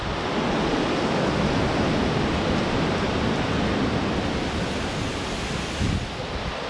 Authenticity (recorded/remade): recorded